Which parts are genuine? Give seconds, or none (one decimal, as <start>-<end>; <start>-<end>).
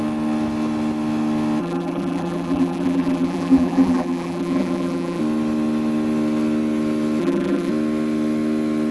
0.0-1.6; 5.2-7.2; 7.7-8.9